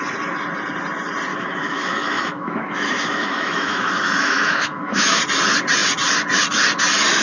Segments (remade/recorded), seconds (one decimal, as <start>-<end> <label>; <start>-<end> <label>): 0.0-1.3 recorded; 1.3-5.2 remade; 5.2-7.2 recorded